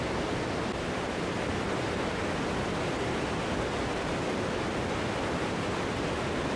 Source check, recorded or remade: recorded